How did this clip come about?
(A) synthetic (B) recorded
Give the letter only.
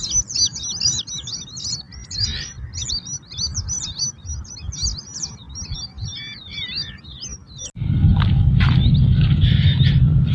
B